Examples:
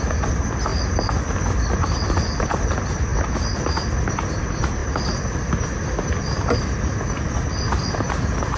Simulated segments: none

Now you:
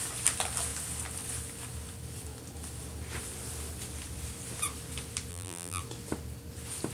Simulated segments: 5.3-5.8

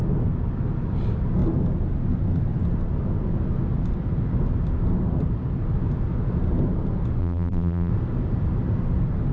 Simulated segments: 7.2-7.9

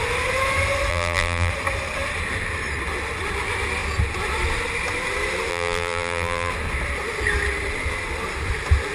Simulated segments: 0.9-1.5; 5.5-6.5

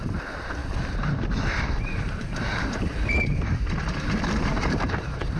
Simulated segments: 0.0-0.6; 1.8-5.4

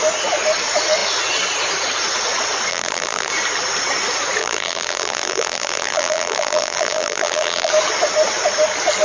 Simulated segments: 2.7-3.3; 4.4-7.7

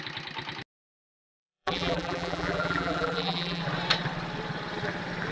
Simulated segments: 1.3-3.6